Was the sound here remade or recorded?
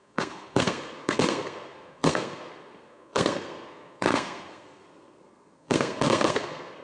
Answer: remade